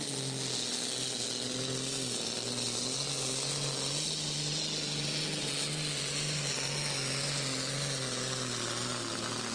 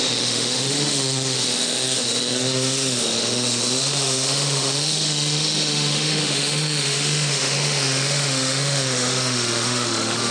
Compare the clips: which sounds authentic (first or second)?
first